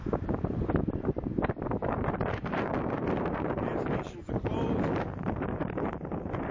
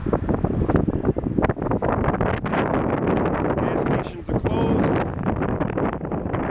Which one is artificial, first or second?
first